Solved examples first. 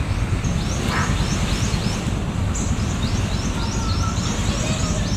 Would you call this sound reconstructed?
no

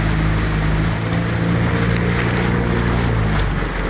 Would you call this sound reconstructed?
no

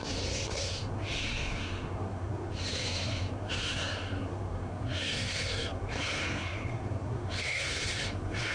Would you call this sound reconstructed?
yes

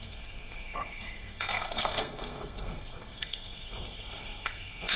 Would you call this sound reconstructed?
yes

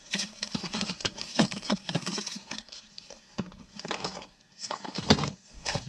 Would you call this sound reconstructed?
yes